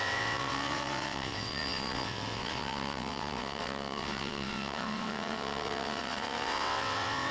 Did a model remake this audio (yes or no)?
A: yes